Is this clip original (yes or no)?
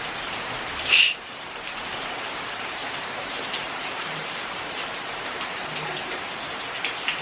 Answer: no